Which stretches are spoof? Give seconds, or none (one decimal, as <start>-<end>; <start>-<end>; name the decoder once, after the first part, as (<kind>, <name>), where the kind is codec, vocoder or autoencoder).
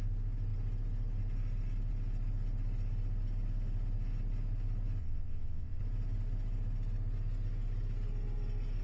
5.0-5.8 (vocoder, WaveNeXt)